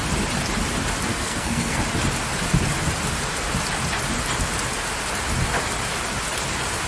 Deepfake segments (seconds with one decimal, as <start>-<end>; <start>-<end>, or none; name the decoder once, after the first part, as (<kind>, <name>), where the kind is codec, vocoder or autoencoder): 1.1-1.8 (codec, SNAC)